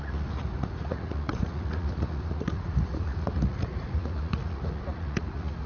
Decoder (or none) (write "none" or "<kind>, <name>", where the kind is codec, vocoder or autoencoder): vocoder, Vocos